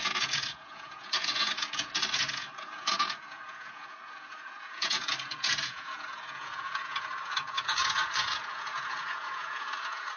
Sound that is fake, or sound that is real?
fake